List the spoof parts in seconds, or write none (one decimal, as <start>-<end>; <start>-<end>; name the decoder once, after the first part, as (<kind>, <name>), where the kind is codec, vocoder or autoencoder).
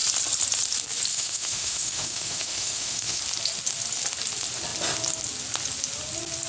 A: 1.1-3.2 (autoencoder, DAC-VAE)